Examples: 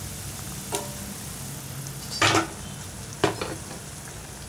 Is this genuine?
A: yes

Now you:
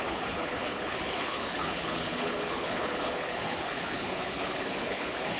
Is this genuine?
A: no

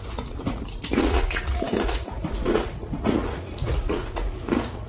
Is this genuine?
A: no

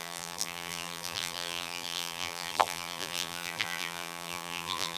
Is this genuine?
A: no